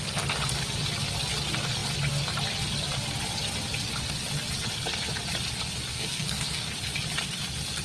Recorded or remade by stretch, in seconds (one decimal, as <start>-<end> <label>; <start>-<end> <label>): 0.0-5.9 recorded; 5.9-6.7 remade; 6.7-7.8 recorded

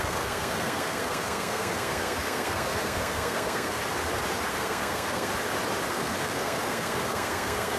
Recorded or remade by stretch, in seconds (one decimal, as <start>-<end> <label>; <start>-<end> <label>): 0.0-3.8 remade; 3.8-4.5 recorded; 4.5-5.3 remade; 5.3-5.9 recorded; 5.9-7.8 remade

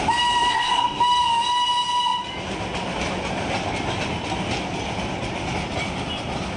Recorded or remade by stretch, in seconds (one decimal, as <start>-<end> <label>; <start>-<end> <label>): 0.0-0.5 recorded; 0.5-1.0 remade; 1.0-6.6 recorded

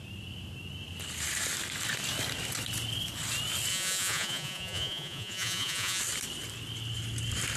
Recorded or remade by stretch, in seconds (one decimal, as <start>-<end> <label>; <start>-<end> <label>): 0.0-3.7 recorded; 3.7-6.0 remade; 6.0-7.6 recorded

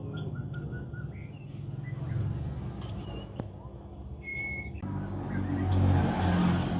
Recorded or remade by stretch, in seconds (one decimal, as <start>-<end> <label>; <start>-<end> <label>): 0.0-6.8 recorded